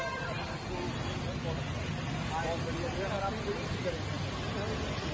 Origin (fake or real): real